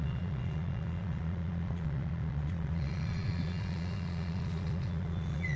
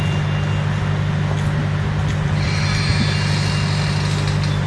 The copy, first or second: first